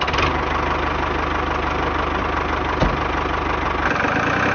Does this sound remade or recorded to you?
recorded